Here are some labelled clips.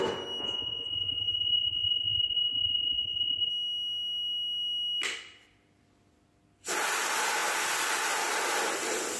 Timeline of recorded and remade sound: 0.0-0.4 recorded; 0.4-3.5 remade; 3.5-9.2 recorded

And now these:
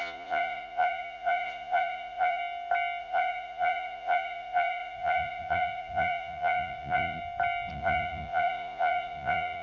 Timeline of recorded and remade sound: 0.0-2.4 remade; 2.4-3.0 recorded; 3.0-7.2 remade; 7.2-7.7 recorded; 7.7-9.6 remade